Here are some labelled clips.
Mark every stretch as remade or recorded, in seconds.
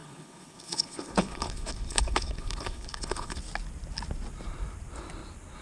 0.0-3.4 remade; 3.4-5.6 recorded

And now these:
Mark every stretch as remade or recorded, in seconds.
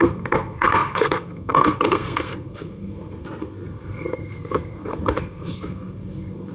0.0-6.5 remade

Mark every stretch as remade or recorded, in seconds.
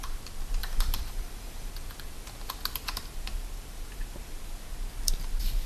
0.0-0.6 recorded; 0.6-1.7 remade; 1.7-5.7 recorded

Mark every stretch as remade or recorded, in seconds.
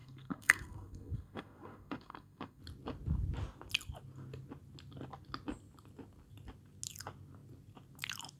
0.0-2.6 remade; 2.6-8.4 recorded